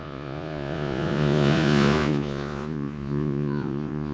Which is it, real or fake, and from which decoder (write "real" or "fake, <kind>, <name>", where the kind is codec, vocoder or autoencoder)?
fake, vocoder, Vocos